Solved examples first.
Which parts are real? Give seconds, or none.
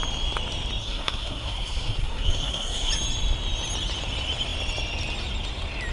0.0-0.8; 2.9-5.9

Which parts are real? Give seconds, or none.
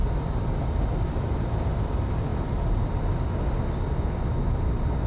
0.0-5.1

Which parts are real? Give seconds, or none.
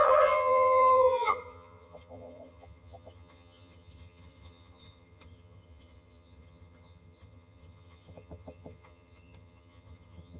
none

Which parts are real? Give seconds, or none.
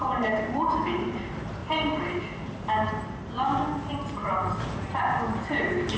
1.6-2.2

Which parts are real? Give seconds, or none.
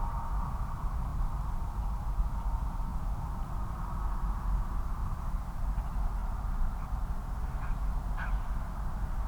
0.0-5.0; 5.6-6.2; 7.1-9.3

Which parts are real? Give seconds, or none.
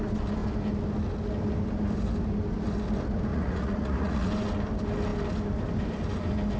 0.0-3.3; 4.3-6.6